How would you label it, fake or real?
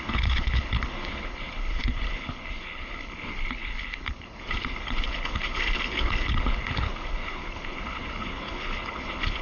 fake